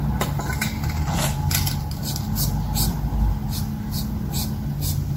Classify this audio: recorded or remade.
recorded